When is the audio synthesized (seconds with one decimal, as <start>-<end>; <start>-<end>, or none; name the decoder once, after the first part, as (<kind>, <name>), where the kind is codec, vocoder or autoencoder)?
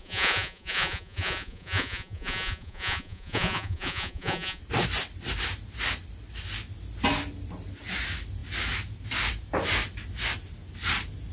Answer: 0.0-4.6 (vocoder, Vocos)